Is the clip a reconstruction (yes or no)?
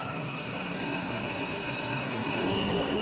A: yes